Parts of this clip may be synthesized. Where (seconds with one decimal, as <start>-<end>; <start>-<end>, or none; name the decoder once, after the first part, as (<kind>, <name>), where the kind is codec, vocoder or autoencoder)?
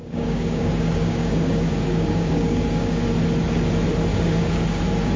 0.0-3.1 (codec, DAC); 4.1-4.8